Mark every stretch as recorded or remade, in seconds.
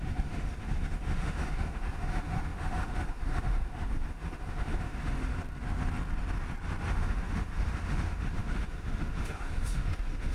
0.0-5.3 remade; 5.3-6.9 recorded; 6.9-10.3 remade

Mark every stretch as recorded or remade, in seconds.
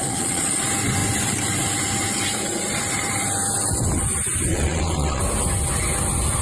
0.0-0.6 remade; 0.6-4.5 recorded; 4.5-5.2 remade; 5.2-6.4 recorded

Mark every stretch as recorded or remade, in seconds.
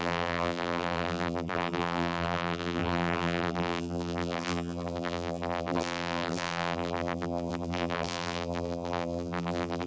0.0-9.9 remade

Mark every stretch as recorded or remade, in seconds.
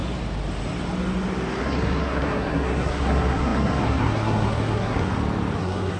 0.0-1.6 recorded; 1.6-5.1 remade; 5.1-5.6 recorded; 5.6-6.0 remade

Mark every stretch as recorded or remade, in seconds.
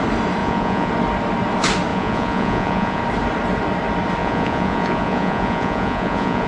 0.0-0.4 recorded; 0.4-0.9 remade; 0.9-1.9 recorded; 1.9-3.0 remade; 3.0-4.2 recorded; 4.2-6.5 remade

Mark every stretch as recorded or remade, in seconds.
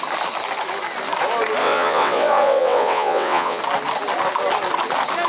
0.0-1.6 recorded; 1.6-3.6 remade; 3.6-5.3 recorded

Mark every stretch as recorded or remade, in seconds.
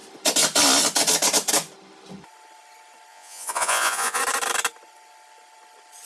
0.0-3.1 recorded; 3.1-4.2 remade; 4.2-6.1 recorded